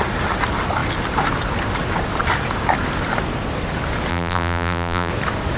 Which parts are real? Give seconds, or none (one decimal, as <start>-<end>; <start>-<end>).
0.0-4.1; 5.1-5.6

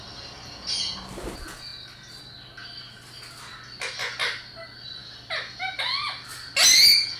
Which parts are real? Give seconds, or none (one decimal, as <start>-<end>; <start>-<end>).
0.0-7.2

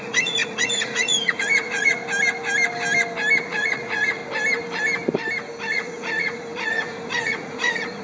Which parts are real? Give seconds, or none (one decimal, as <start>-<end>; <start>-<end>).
2.0-3.4; 4.2-5.7

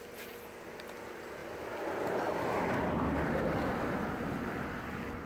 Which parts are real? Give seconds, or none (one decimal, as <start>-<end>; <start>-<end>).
0.0-5.3

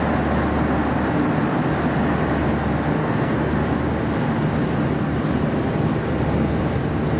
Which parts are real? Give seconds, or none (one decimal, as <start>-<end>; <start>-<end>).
0.0-3.0; 3.5-7.2